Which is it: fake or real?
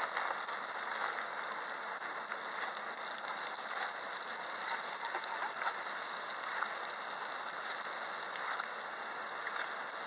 real